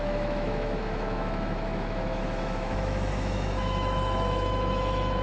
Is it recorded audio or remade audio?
remade